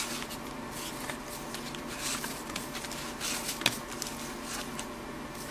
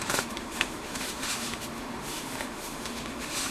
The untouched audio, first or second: first